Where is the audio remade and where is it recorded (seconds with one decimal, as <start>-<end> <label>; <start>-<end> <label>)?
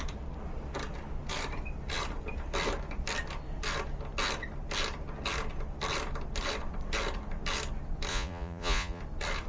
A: 0.0-8.1 recorded; 8.1-9.0 remade; 9.0-9.5 recorded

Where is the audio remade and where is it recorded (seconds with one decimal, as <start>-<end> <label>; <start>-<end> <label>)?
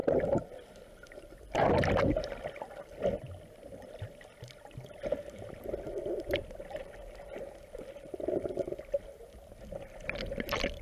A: 0.0-10.8 recorded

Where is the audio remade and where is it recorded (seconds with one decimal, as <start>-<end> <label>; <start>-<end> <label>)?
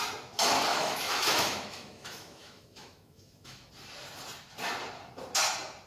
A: 0.0-0.7 recorded; 0.7-3.7 remade; 3.7-5.9 recorded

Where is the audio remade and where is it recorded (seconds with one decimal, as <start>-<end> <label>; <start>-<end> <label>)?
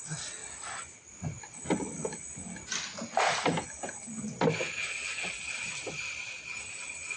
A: 0.0-7.2 recorded